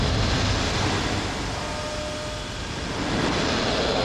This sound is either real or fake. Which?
real